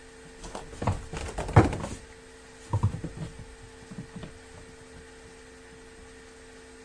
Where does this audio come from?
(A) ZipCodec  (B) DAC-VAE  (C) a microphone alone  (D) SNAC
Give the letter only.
C